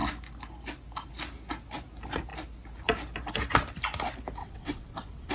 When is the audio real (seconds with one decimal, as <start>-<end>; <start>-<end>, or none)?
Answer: 0.0-4.4